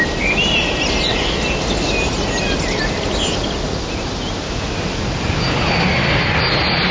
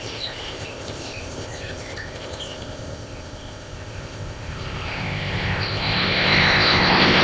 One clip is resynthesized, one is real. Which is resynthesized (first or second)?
second